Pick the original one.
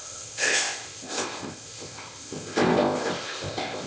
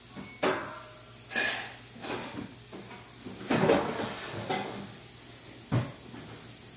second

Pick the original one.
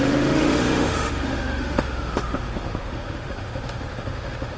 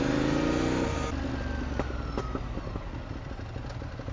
second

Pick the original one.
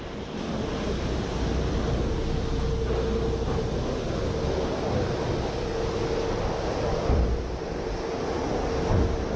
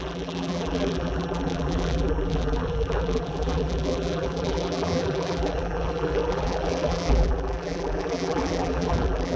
first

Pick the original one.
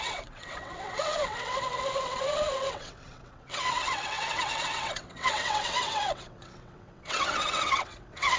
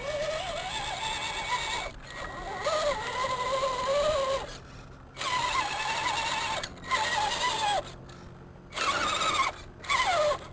second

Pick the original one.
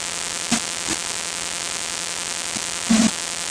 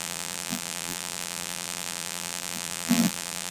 first